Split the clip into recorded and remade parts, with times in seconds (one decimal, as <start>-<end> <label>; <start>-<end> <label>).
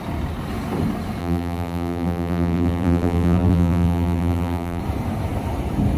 0.0-1.2 recorded; 1.2-4.8 remade; 4.8-6.0 recorded